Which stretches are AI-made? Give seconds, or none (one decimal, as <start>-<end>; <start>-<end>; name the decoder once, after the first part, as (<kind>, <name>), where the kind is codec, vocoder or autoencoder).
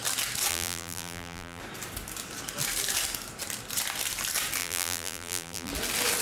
0.5-1.6 (vocoder, BigVGAN v2); 4.6-5.7